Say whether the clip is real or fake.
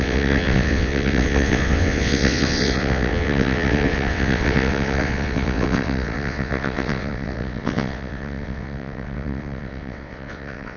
fake